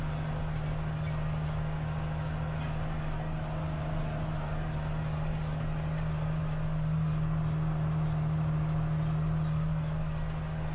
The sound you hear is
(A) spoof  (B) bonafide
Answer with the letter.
B